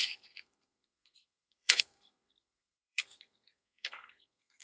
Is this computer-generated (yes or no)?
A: yes